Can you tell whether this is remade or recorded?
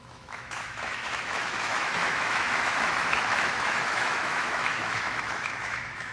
remade